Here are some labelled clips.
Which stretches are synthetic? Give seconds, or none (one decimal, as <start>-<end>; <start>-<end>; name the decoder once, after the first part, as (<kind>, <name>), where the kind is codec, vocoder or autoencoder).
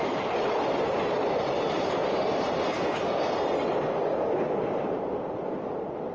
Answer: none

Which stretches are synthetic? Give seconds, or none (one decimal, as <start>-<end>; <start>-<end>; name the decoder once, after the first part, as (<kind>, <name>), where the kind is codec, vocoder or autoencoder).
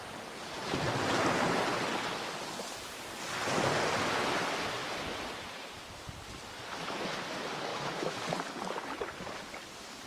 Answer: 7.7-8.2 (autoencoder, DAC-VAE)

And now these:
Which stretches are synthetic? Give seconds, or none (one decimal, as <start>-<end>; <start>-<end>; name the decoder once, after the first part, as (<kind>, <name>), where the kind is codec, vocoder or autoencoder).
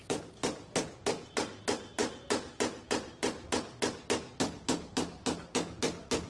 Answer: none